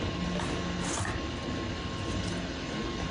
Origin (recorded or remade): recorded